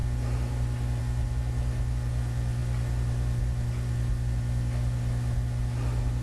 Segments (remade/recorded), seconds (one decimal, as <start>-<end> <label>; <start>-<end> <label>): 0.0-6.2 recorded

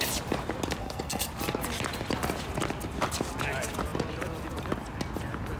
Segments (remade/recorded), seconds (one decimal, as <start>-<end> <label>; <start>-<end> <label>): 0.0-0.8 recorded; 0.8-1.3 remade; 1.3-5.6 recorded

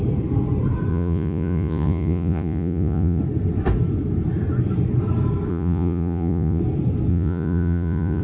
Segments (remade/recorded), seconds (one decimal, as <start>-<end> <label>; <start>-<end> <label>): 0.0-0.9 recorded; 0.9-3.2 remade; 3.2-5.5 recorded; 5.5-6.6 remade; 6.6-7.1 recorded; 7.1-8.2 remade